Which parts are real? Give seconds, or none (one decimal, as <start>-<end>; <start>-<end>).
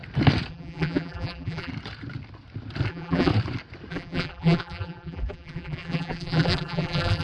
0.0-0.5; 1.7-2.9; 3.3-3.9